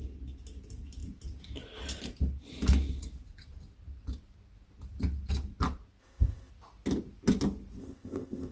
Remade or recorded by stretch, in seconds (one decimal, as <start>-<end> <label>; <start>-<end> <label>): 0.0-6.0 recorded; 6.0-6.5 remade; 6.5-7.8 recorded; 7.8-8.5 remade